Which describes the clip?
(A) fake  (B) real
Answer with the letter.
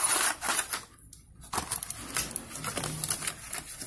B